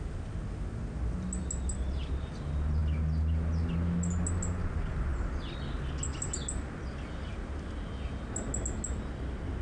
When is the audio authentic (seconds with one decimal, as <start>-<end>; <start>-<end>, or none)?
0.0-9.6